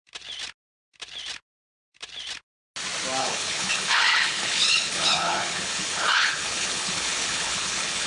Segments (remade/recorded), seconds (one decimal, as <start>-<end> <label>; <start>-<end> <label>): 0.0-3.2 recorded; 3.2-8.1 remade